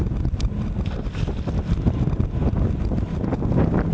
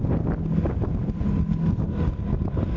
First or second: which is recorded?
second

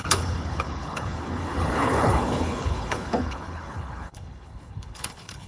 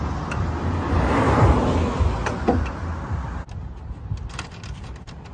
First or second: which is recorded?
second